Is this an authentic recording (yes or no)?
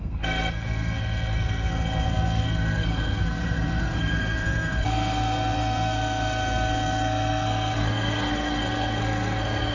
no